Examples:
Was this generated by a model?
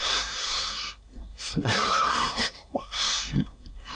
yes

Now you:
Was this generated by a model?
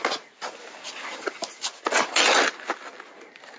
no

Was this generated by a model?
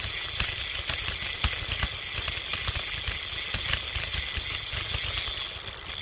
no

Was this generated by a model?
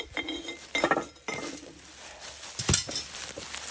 no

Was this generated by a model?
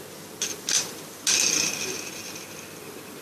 no